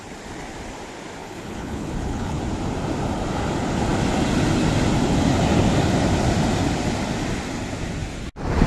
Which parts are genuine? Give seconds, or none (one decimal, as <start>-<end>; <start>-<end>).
0.0-1.2; 2.4-8.7